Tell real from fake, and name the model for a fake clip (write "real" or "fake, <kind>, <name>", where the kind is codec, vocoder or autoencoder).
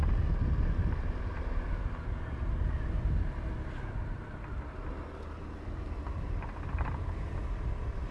real